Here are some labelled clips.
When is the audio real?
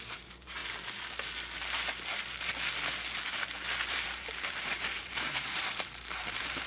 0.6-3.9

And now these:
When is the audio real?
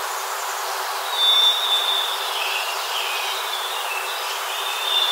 0.0-5.1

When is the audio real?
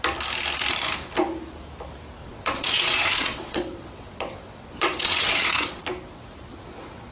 0.0-2.2; 5.8-7.1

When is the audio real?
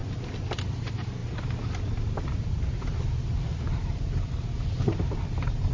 0.0-0.7; 1.2-3.3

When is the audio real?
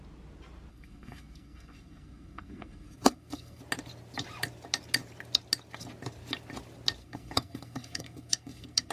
0.0-0.7; 3.6-7.0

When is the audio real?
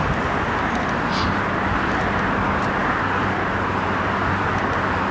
0.0-5.1